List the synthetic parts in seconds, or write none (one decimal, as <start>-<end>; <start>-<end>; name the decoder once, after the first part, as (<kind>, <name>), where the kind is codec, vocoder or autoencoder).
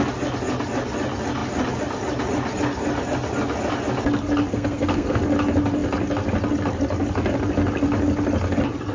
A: 4.5-5.2 (codec, SNAC)